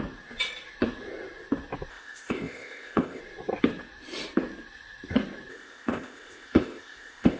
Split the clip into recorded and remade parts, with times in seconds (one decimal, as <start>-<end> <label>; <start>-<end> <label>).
0.0-1.9 recorded; 1.9-3.2 remade; 3.2-5.5 recorded; 5.5-7.4 remade

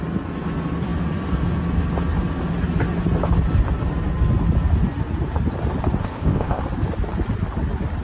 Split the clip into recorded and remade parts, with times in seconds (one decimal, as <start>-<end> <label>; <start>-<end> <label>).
0.0-6.0 recorded; 6.0-6.6 remade; 6.6-8.0 recorded

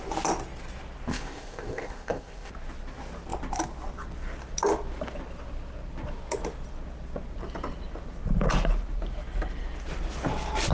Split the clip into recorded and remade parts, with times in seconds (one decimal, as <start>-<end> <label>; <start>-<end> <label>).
0.0-1.1 recorded; 1.1-2.5 remade; 2.5-10.7 recorded

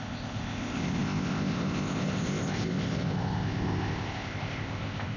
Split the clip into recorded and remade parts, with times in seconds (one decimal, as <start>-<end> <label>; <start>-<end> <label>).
0.0-5.2 remade

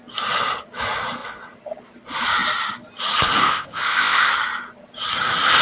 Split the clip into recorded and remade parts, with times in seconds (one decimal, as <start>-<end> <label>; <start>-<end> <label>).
0.0-3.4 recorded; 3.4-4.3 remade; 4.3-5.6 recorded